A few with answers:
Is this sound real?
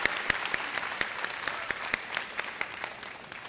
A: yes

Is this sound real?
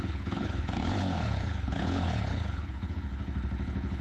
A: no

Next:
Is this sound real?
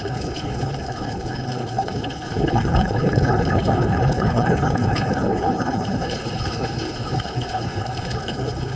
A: no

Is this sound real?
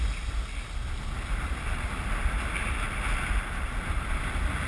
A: yes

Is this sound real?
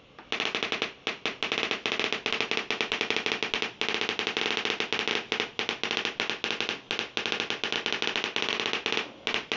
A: yes